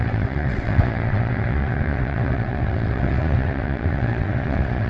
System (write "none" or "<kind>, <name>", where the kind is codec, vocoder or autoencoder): vocoder, WaveNeXt